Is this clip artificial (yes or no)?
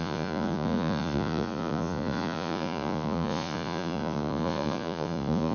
yes